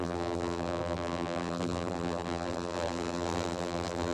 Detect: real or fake fake